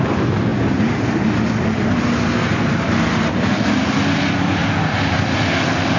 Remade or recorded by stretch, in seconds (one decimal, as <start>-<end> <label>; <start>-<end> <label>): 0.0-6.0 recorded